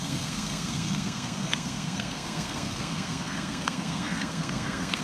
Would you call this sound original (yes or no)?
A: no